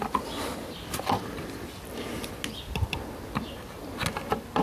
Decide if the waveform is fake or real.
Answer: real